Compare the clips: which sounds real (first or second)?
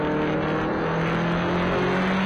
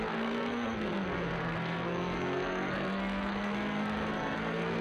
first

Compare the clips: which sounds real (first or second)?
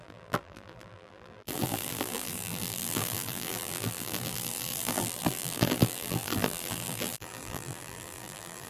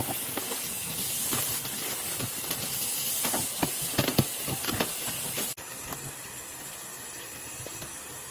second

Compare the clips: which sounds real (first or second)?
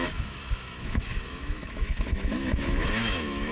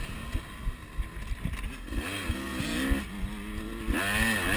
second